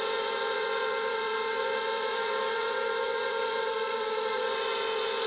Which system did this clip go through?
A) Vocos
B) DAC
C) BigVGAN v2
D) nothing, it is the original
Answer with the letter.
A